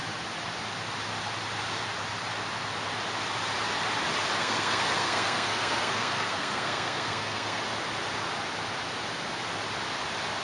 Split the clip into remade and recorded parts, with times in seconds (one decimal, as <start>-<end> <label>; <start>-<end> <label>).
0.0-4.4 recorded; 4.4-7.6 remade; 7.6-10.4 recorded